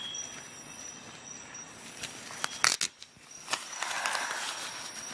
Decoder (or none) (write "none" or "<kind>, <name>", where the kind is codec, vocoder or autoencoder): none